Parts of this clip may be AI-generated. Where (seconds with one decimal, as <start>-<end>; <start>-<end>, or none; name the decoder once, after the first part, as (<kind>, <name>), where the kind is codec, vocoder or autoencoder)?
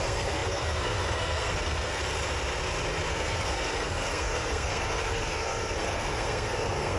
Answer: 0.0-2.0 (codec, SNAC); 3.1-7.0